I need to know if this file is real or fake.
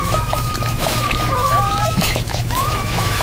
fake